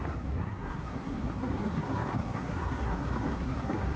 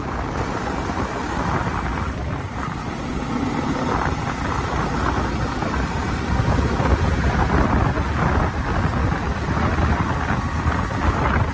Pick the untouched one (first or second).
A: second